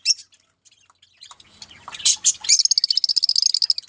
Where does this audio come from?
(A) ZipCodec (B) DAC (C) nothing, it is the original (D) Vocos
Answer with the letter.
C